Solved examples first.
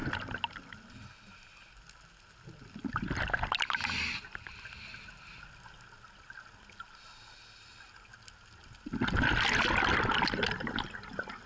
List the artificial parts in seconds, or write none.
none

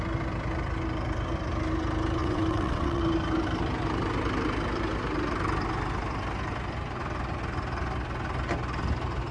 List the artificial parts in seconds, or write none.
2.2-3.0

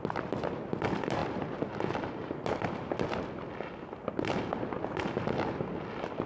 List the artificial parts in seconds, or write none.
none

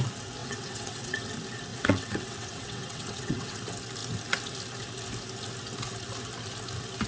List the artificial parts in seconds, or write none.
0.4-1.2; 1.7-3.6

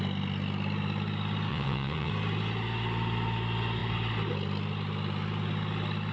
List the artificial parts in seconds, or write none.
1.5-2.1

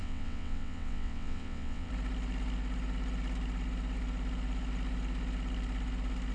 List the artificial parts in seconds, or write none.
0.0-1.9